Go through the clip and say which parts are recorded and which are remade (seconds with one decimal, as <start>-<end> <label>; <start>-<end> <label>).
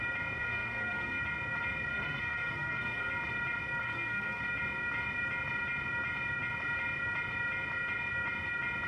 0.0-0.4 recorded; 0.4-1.2 remade; 1.2-1.9 recorded; 1.9-3.1 remade; 3.1-3.8 recorded; 3.8-4.4 remade; 4.4-8.9 recorded